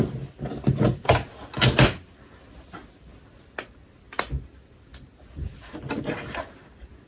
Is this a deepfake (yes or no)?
no